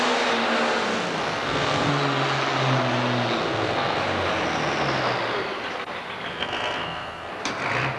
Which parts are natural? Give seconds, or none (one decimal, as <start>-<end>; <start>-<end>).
0.0-1.2; 1.9-3.4; 4.0-6.3; 7.3-8.0